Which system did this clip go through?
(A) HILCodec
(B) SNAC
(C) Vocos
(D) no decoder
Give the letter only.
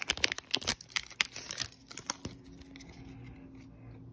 D